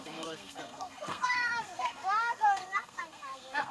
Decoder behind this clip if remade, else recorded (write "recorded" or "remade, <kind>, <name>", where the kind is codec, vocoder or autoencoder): remade, codec, SNAC